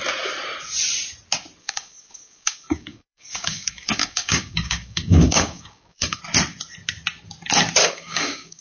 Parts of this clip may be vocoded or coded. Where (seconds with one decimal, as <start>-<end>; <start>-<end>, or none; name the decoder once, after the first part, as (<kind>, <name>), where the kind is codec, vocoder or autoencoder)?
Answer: 1.6-6.2 (codec, DAC); 7.8-8.6